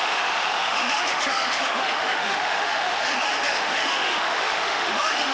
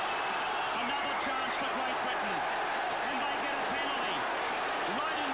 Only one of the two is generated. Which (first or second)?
first